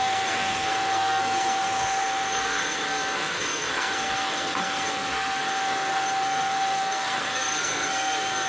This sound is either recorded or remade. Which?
remade